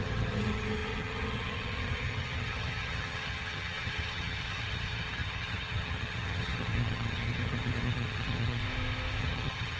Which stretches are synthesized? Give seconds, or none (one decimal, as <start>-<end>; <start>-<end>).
0.0-8.6; 9.2-9.8